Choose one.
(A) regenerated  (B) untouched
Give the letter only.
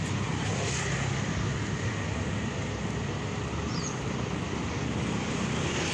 B